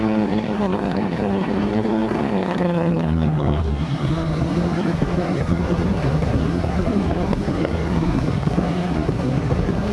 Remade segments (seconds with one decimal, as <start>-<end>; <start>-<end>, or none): 0.0-9.9